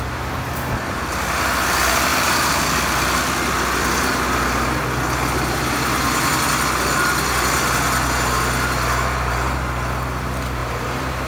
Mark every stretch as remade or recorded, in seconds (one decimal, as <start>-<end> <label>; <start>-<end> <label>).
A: 0.0-2.1 recorded; 2.1-2.6 remade; 2.6-10.6 recorded; 10.6-11.3 remade